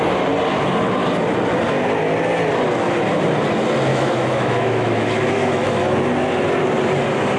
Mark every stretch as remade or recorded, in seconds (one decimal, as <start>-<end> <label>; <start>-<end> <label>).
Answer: 0.0-3.9 recorded; 3.9-5.7 remade; 5.7-7.4 recorded